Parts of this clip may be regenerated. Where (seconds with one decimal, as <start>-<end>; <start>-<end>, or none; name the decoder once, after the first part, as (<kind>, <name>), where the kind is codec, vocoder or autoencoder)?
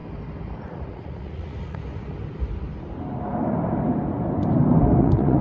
0.6-1.8 (vocoder, Vocos); 5.0-5.4